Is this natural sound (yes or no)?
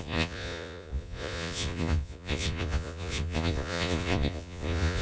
no